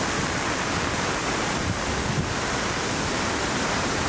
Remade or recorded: recorded